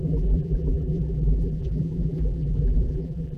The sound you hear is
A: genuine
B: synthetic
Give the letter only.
B